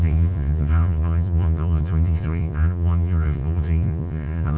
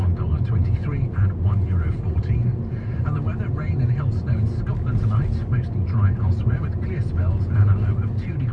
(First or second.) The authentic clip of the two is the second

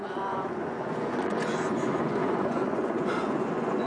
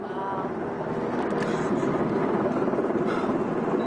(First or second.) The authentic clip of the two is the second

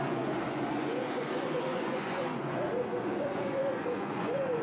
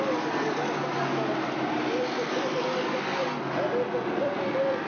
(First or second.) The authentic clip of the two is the second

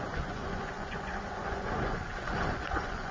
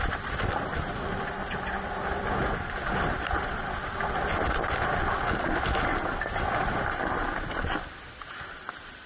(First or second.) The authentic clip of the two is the second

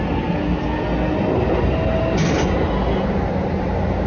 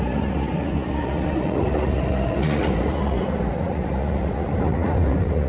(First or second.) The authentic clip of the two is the first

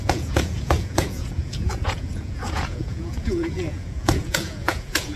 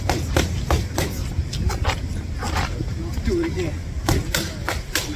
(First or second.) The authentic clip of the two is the second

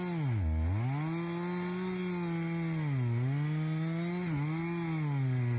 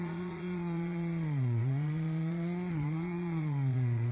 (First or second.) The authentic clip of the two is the first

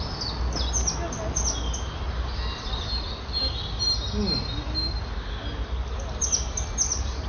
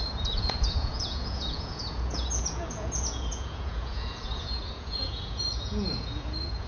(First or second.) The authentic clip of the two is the first